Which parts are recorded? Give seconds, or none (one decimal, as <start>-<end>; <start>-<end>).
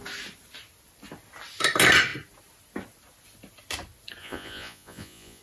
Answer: 0.0-4.2